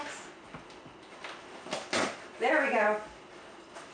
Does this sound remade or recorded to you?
recorded